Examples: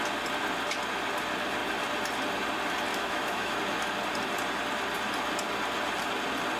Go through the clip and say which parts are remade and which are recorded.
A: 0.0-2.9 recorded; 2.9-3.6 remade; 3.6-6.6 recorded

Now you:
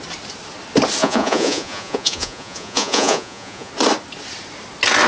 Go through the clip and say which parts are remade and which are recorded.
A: 0.0-1.0 recorded; 1.0-3.7 remade; 3.7-5.1 recorded